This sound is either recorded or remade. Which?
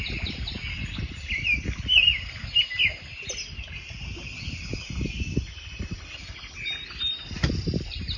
recorded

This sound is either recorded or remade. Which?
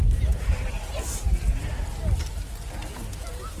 recorded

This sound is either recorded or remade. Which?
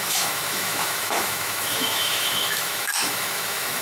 remade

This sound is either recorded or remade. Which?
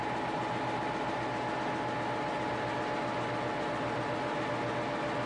recorded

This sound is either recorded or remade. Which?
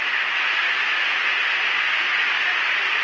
recorded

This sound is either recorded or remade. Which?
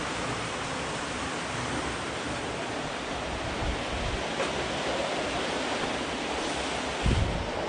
recorded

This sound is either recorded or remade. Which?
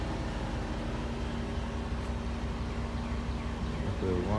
recorded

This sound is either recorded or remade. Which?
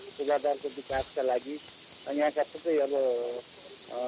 recorded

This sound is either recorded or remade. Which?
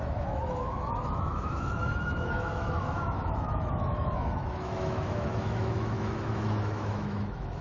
remade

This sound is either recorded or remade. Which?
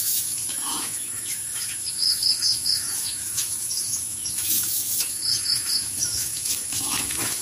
remade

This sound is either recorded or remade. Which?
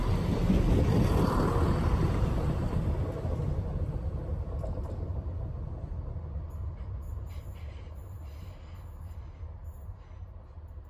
recorded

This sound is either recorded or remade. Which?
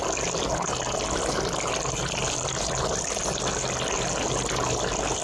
recorded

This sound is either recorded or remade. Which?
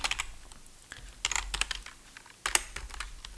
recorded